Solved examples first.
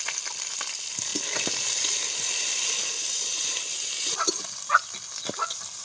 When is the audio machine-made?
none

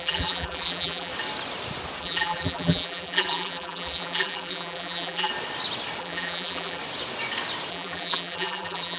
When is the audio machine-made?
0.0-1.1 (vocoder, BigVGAN v2); 2.0-5.3; 6.0-6.8; 7.7-9.0

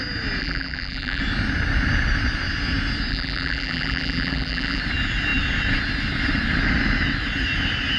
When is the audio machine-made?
0.4-1.2 (vocoder, BigVGAN v2); 3.1-4.8